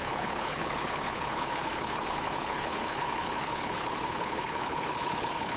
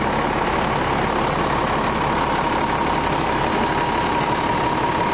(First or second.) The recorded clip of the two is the second